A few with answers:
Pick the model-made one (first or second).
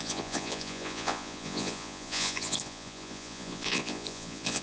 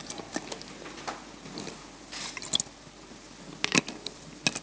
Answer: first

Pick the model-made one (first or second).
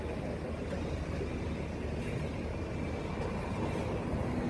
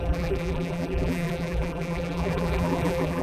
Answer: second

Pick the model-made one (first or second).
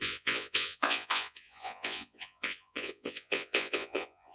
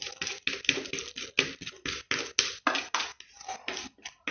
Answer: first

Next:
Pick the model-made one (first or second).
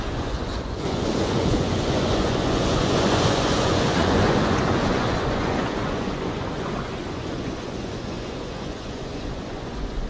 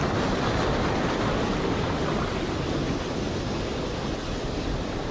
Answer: first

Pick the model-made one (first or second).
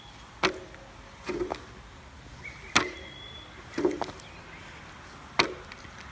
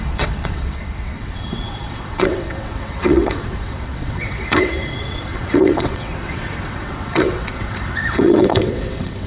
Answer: second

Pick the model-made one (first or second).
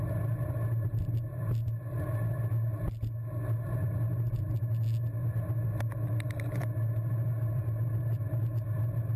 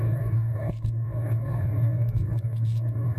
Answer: second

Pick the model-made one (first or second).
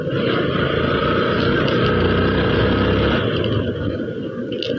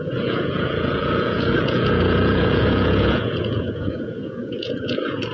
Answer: second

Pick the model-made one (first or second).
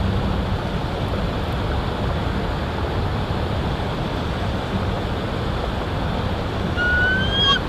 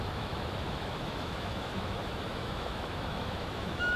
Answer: second